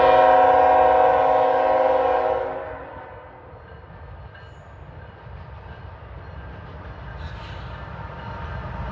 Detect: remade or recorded recorded